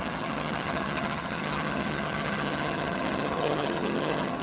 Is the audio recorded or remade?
remade